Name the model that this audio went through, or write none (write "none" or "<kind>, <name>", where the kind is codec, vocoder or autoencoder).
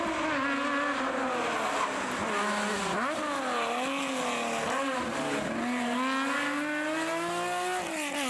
none